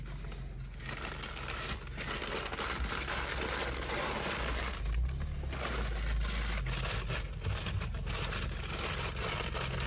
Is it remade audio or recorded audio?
recorded